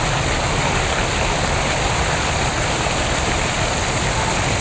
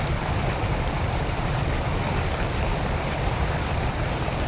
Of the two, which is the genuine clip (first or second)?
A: first